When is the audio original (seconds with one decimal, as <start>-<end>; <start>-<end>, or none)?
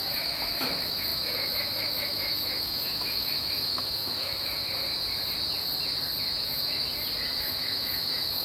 4.6-6.2; 6.9-7.4